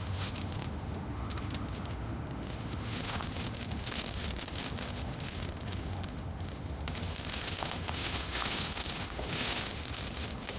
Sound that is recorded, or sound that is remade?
remade